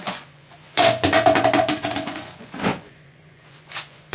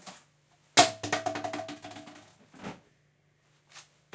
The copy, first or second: first